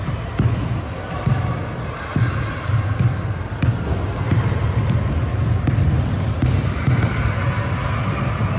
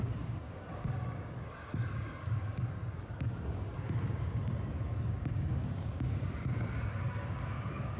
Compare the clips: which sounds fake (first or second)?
second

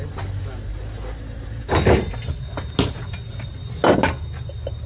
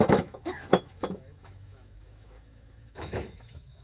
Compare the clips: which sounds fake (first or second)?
second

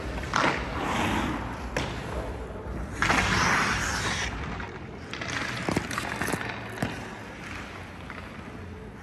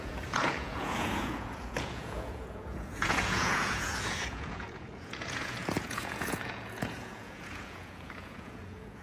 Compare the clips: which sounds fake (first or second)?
second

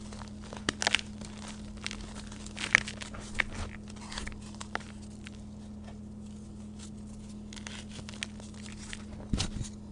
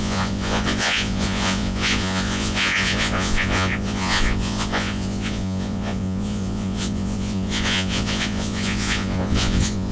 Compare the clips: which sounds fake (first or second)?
second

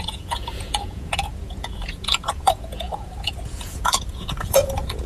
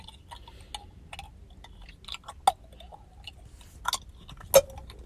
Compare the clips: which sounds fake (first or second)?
first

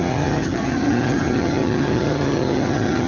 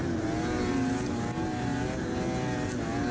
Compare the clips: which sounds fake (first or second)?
first